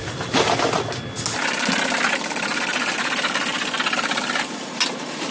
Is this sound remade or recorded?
recorded